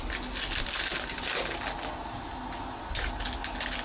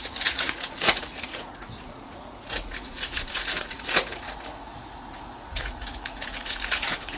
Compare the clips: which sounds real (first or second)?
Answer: first